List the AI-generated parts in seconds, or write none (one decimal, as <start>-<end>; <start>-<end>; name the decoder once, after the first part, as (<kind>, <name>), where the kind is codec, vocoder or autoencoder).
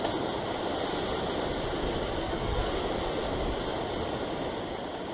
2.2-2.7 (codec, SNAC)